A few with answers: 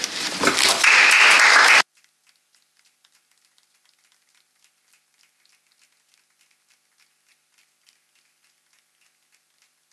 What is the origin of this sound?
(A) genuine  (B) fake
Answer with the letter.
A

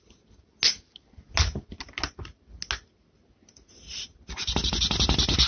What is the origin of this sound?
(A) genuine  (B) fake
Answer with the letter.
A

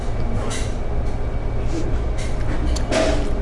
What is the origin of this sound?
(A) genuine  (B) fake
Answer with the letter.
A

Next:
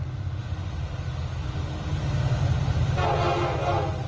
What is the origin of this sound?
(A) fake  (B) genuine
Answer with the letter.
B